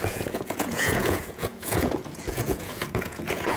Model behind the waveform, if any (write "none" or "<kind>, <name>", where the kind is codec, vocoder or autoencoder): vocoder, Vocos